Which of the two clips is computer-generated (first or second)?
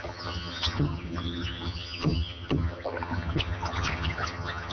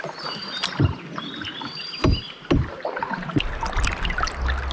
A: first